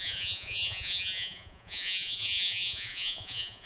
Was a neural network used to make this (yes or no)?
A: yes